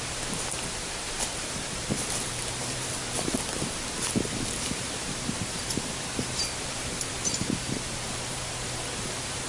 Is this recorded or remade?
remade